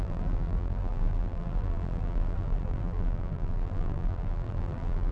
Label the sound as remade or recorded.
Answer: remade